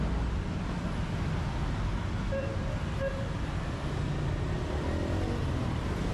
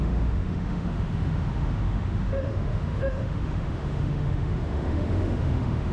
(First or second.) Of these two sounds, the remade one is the second